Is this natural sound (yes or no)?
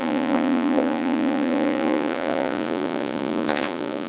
no